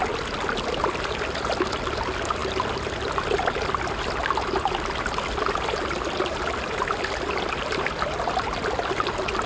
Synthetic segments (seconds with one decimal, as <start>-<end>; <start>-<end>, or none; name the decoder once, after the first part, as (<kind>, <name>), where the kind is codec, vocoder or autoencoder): none